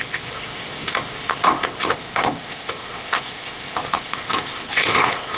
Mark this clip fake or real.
fake